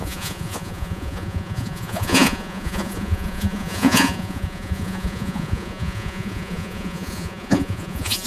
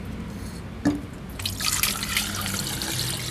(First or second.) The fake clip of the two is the first